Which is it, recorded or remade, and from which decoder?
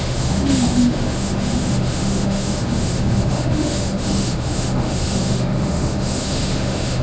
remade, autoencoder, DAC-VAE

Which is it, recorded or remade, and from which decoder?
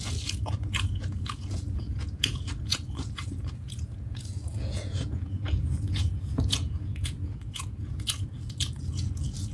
remade, vocoder, Vocos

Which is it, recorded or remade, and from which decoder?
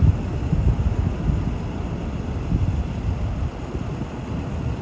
recorded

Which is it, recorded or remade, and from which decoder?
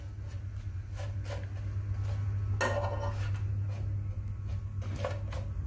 recorded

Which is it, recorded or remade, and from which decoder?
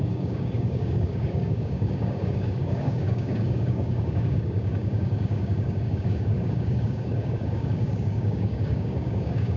remade, codec, DAC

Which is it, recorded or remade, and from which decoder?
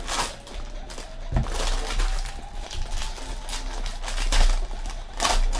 recorded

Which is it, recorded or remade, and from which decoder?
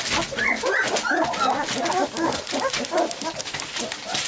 recorded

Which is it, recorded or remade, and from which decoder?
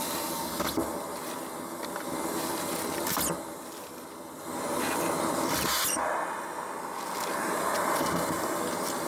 recorded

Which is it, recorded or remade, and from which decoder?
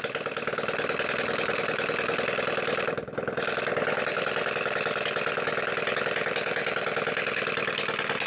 recorded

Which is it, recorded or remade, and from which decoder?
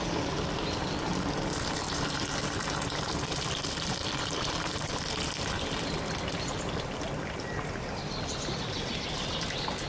recorded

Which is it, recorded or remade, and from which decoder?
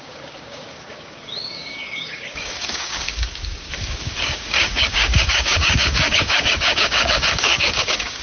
remade, codec, DAC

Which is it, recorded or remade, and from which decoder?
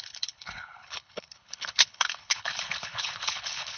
remade, codec, HILCodec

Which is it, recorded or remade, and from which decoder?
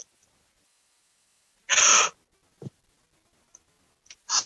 recorded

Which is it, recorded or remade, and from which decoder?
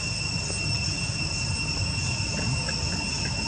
recorded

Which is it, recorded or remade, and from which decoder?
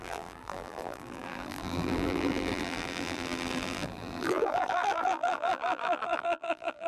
remade, vocoder, BigVGAN v2